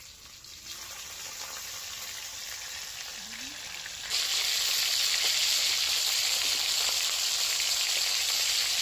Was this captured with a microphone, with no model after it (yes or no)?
yes